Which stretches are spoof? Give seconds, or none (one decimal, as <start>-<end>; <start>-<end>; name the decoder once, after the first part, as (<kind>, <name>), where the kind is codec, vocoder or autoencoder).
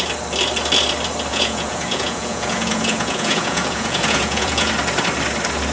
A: 1.3-4.7 (vocoder, Vocos)